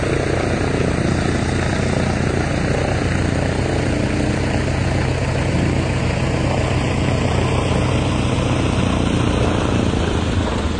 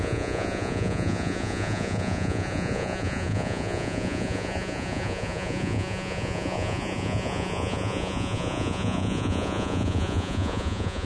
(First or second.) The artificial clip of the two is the second